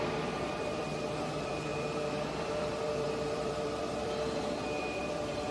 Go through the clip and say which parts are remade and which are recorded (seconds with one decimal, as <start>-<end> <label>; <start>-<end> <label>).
0.0-5.5 remade